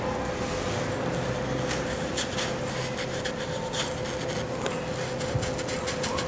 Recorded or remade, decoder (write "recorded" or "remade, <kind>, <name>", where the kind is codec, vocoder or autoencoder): recorded